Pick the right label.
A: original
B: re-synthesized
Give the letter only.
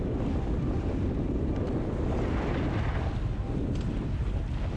A